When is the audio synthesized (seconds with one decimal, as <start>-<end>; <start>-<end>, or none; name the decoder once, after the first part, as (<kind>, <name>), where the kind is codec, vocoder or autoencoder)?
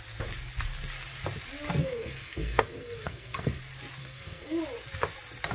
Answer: 1.8-3.6 (codec, SNAC); 4.0-4.6